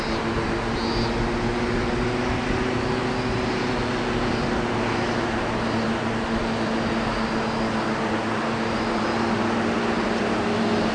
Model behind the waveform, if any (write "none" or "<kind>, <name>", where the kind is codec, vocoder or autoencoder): none